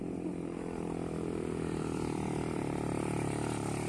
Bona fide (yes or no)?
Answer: yes